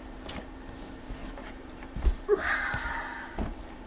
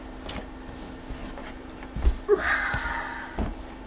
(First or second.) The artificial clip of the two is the first